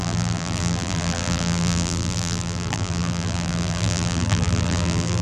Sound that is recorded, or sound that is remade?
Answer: remade